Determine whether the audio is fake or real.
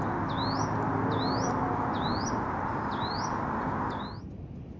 real